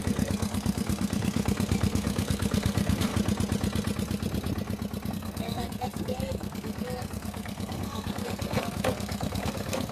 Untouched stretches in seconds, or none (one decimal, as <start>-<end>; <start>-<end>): 3.1-5.1